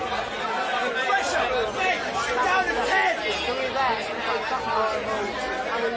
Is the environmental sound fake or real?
real